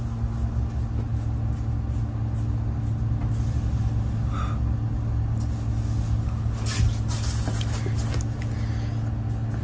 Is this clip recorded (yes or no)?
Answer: yes